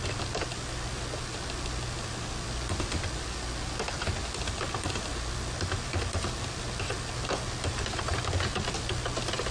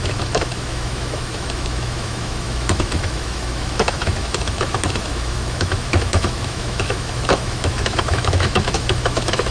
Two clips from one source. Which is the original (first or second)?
first